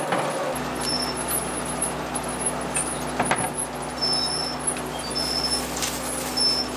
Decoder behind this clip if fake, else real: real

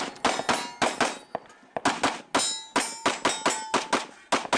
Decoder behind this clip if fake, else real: real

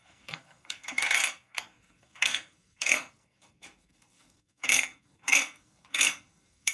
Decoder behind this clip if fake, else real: fake, codec, SNAC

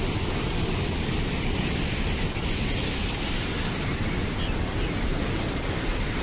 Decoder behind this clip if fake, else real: real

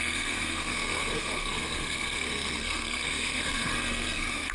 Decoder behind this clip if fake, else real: fake, codec, SNAC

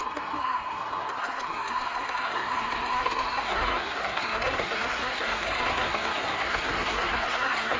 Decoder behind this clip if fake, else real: fake, codec, SNAC